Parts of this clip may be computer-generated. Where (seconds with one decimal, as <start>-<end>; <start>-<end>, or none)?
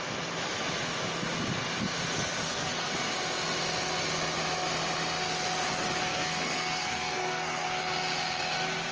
2.4-2.9; 6.0-7.8